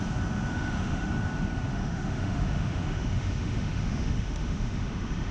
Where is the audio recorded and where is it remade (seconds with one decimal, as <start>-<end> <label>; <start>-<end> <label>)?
0.0-0.5 recorded; 0.5-1.1 remade; 1.1-1.7 recorded; 1.7-5.3 remade